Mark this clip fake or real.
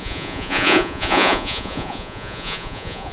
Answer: fake